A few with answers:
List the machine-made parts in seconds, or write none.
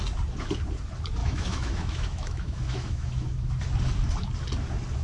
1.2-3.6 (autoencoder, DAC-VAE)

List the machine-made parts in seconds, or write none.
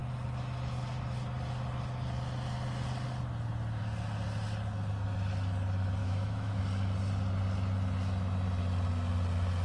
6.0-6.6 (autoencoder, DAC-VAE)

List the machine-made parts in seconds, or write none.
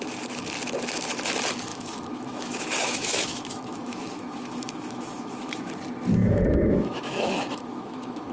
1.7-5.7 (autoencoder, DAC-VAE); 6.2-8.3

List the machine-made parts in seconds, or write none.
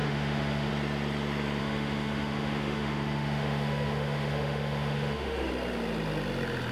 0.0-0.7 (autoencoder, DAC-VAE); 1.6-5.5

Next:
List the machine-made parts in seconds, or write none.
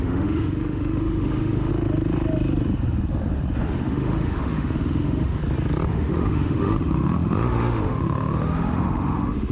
0.0-1.7 (autoencoder, DAC-VAE); 3.7-5.4; 5.9-9.5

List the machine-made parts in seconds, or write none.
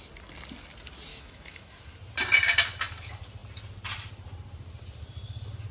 1.1-1.7 (autoencoder, DAC-VAE)